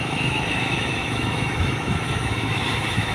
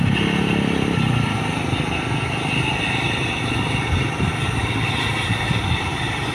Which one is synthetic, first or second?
first